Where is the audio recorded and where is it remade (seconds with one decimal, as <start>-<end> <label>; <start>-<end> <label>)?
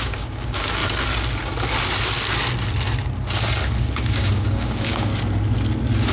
0.0-0.8 remade; 0.8-3.8 recorded; 3.8-5.1 remade; 5.1-6.1 recorded